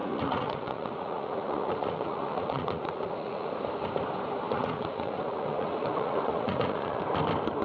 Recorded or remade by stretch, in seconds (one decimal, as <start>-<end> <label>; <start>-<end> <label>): 0.0-3.5 remade; 3.5-4.5 recorded; 4.5-7.0 remade; 7.0-7.6 recorded